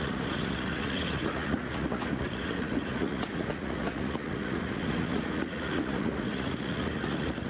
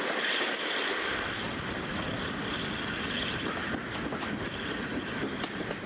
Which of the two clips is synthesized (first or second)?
first